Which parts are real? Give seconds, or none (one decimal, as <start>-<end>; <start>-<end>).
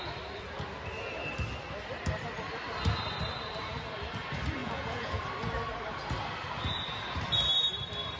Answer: 0.0-4.6; 5.2-8.2